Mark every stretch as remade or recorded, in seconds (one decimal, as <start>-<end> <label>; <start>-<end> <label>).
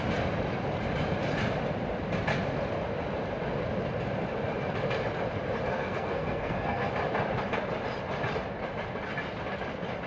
0.0-5.7 recorded; 5.7-6.9 remade; 6.9-10.1 recorded